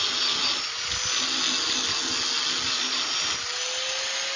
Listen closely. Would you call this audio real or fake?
real